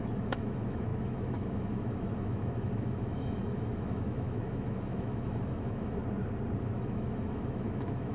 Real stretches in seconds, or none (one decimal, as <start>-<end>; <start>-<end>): 6.0-6.6